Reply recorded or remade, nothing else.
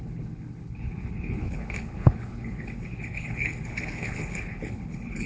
remade